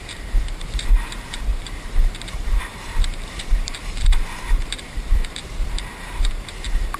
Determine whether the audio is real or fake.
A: fake